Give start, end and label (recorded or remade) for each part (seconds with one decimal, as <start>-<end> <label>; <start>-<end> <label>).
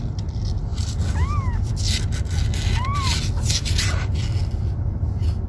0.0-5.5 recorded